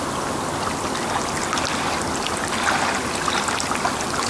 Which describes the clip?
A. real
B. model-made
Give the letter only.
A